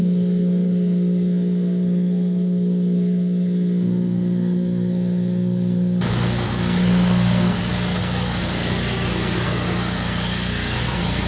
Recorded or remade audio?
remade